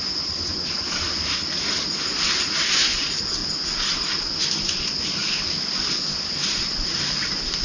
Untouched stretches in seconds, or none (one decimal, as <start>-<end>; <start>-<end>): 0.0-7.6